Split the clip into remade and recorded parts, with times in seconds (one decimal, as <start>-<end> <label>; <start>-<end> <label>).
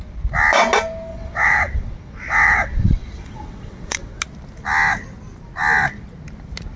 0.0-1.1 recorded; 1.1-4.2 remade; 4.2-6.8 recorded